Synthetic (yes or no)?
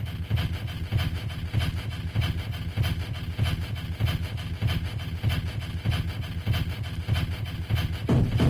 no